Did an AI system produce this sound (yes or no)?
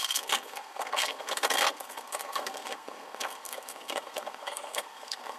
yes